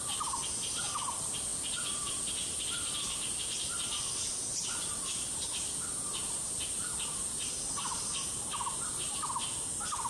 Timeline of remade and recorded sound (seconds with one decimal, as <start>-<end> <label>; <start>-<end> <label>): 0.0-10.1 recorded